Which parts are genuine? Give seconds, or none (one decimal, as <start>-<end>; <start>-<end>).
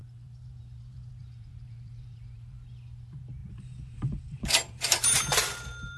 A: none